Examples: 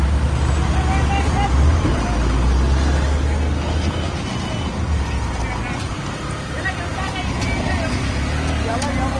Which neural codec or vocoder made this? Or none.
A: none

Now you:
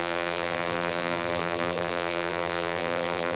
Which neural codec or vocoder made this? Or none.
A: vocoder, BigVGAN v2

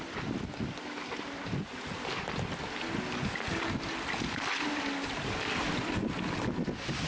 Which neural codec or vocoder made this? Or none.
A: none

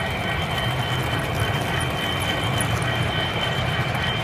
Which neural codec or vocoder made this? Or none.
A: vocoder, BigVGAN v2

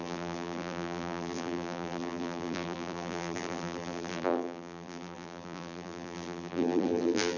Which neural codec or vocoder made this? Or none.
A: vocoder, BigVGAN v2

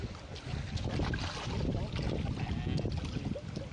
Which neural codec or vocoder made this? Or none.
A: none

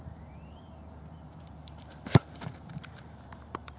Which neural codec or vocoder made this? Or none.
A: vocoder, BigVGAN v2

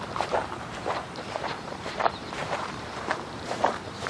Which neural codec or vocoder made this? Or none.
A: vocoder, BigVGAN v2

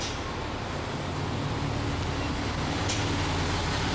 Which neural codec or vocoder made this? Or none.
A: none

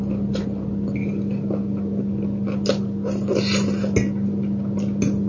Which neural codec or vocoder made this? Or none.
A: none